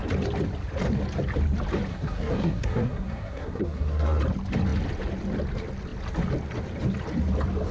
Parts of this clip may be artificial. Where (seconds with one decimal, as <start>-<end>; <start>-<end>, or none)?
1.9-4.2